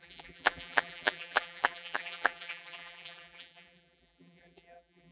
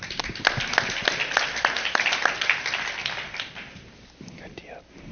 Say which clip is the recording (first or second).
second